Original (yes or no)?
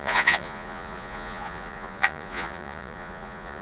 no